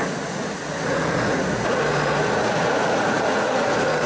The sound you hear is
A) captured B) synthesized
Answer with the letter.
B